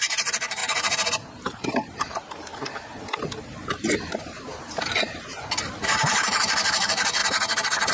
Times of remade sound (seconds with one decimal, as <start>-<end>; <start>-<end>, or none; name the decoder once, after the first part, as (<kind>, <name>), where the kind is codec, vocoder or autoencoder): 0.0-0.6 (vocoder, BigVGAN v2); 1.2-2.5; 4.1-7.2